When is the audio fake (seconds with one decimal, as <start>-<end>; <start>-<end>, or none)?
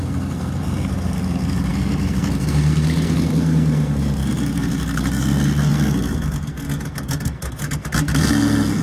0.0-8.8